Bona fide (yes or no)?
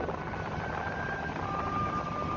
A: yes